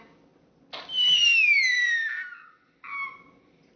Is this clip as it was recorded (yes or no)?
yes